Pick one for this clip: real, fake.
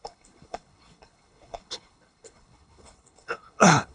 fake